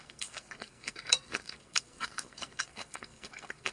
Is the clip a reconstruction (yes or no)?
yes